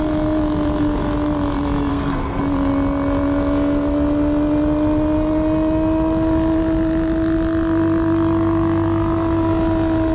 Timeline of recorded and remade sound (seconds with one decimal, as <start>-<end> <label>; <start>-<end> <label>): 0.0-1.9 recorded; 1.9-2.4 remade; 2.4-10.1 recorded